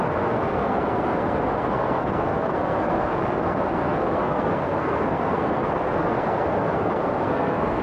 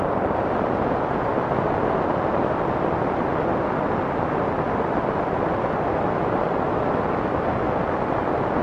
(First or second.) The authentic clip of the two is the second